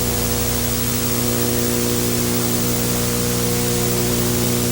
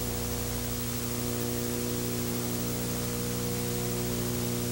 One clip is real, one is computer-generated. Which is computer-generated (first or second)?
first